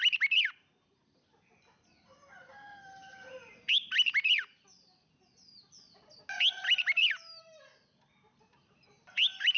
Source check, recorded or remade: recorded